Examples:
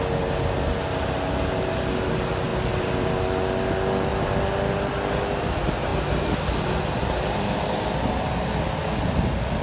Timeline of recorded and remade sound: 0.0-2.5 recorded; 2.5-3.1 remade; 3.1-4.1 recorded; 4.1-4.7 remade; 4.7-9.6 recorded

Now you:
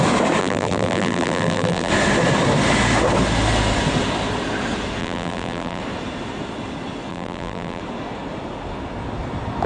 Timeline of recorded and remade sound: 0.0-0.4 recorded; 0.4-1.9 remade; 1.9-5.0 recorded; 5.0-5.8 remade; 5.8-7.1 recorded; 7.1-7.8 remade; 7.8-9.7 recorded